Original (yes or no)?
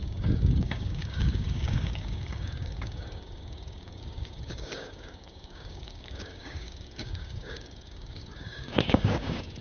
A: no